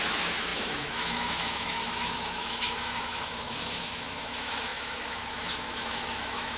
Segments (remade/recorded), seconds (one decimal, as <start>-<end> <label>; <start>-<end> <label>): 0.0-6.6 remade